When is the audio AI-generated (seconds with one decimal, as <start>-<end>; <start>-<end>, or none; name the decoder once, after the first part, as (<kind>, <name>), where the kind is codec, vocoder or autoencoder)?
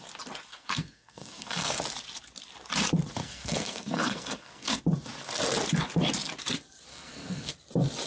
0.5-1.8 (codec, SNAC); 3.2-4.8; 6.9-7.5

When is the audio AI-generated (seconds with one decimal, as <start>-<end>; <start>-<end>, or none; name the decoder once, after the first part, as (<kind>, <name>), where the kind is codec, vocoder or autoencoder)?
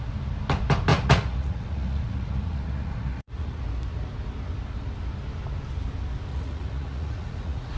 0.9-3.6 (vocoder, Vocos); 6.3-7.8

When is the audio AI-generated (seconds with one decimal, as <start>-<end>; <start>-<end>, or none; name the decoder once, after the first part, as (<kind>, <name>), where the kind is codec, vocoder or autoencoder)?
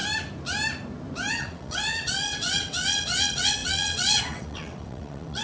1.3-5.4 (vocoder, WaveNeXt)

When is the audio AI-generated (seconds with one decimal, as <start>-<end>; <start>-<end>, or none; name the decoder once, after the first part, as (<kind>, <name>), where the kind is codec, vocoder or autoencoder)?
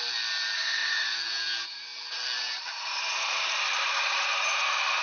0.0-5.0 (vocoder, BigVGAN v2)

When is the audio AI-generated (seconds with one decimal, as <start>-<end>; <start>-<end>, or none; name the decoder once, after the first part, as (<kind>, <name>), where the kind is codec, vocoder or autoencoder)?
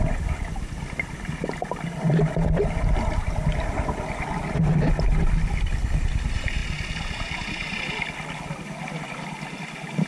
none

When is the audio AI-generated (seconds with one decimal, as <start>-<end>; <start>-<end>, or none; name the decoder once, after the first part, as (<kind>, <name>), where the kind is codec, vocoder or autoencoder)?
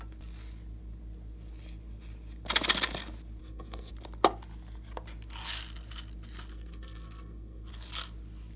3.4-3.9 (codec, SNAC); 6.5-7.7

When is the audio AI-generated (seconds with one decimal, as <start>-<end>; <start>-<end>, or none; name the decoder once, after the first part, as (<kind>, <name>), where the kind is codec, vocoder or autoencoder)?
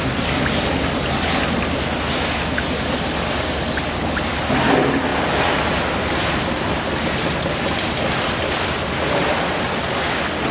none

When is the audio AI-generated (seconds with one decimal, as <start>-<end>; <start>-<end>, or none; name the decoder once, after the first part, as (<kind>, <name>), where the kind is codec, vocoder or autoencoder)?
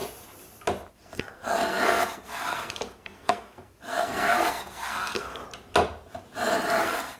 0.9-5.4 (codec, SNAC); 6.8-7.2